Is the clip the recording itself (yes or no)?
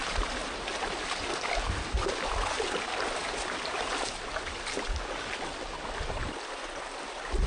yes